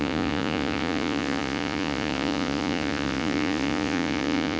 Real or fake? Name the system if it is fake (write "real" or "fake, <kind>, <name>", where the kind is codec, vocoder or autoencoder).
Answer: fake, vocoder, Vocos